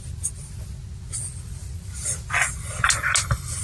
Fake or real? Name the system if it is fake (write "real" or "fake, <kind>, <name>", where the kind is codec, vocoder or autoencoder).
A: real